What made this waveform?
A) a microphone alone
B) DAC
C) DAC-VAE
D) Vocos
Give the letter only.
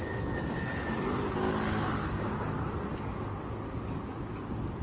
A